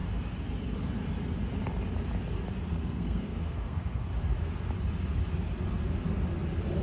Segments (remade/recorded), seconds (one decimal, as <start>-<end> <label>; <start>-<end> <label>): 0.0-2.7 recorded; 2.7-4.1 remade; 4.1-6.8 recorded